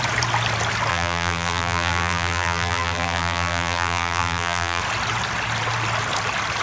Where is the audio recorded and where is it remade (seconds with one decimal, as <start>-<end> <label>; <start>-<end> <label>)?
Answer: 0.0-0.9 recorded; 0.9-4.8 remade; 4.8-6.6 recorded